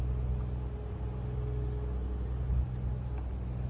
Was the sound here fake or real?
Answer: real